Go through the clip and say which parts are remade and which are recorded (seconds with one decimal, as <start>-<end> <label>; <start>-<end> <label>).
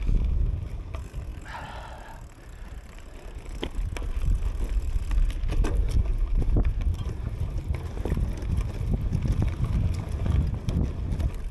0.0-6.1 recorded; 6.1-8.2 remade; 8.2-11.5 recorded